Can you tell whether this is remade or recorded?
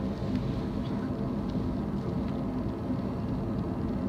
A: recorded